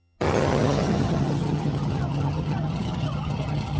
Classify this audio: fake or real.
fake